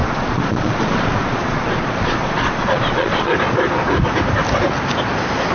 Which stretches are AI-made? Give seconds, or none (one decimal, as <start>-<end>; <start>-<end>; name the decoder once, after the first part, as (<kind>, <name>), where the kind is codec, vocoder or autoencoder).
0.0-3.3 (vocoder, Vocos)